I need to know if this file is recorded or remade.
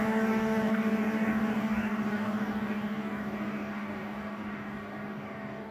remade